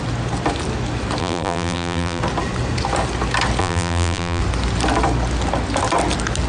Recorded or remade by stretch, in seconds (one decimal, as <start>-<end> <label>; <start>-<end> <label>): 0.0-1.2 recorded; 1.2-2.2 remade; 2.2-3.6 recorded; 3.6-4.4 remade; 4.4-6.5 recorded